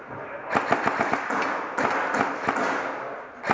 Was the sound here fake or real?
real